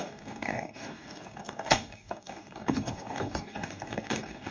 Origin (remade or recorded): remade